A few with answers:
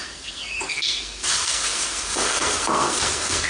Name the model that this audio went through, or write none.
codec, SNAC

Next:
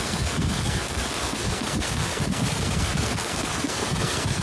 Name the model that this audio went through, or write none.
codec, SNAC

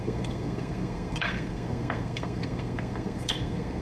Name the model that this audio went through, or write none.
codec, SNAC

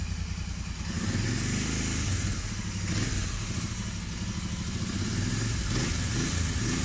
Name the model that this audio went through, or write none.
none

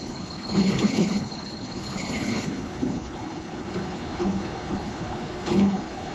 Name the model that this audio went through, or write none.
codec, HILCodec